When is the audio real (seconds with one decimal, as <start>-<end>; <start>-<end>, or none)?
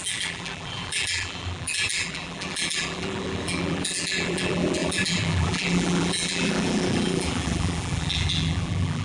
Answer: none